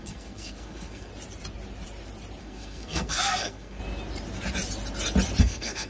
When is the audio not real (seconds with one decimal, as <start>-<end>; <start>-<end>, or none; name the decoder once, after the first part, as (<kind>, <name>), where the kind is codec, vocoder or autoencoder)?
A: 0.0-1.1 (codec, SNAC); 2.4-3.8; 5.4-5.9